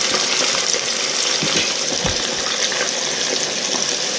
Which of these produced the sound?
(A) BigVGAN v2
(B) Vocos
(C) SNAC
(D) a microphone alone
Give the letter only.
D